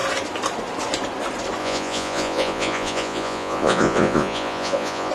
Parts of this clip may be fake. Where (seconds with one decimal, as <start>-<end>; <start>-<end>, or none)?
1.6-5.1